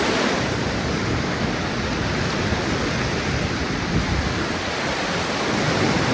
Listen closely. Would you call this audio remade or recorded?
remade